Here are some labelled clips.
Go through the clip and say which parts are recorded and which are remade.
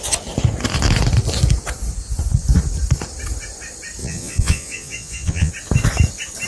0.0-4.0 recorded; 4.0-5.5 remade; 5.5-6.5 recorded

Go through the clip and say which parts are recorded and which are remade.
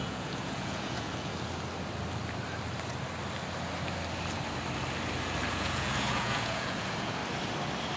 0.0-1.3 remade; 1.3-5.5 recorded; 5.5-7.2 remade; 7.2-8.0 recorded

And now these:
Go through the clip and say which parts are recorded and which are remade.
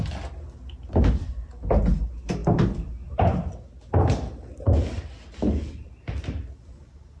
0.0-7.2 recorded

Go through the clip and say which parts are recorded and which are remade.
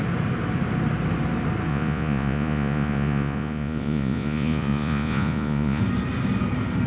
0.0-1.7 recorded; 1.7-5.8 remade; 5.8-6.9 recorded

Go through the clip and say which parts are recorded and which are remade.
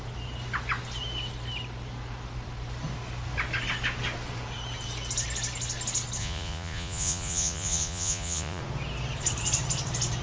0.0-6.2 recorded; 6.2-8.6 remade; 8.6-10.2 recorded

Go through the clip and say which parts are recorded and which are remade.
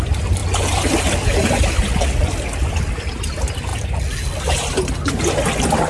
0.0-5.9 recorded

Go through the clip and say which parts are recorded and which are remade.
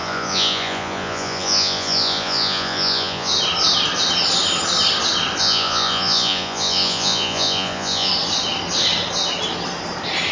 0.0-3.3 remade; 3.3-5.4 recorded; 5.4-8.1 remade; 8.1-10.3 recorded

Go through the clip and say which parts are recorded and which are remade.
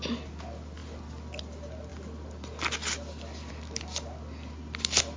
0.0-5.2 recorded